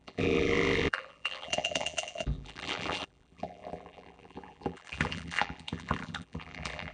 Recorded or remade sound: remade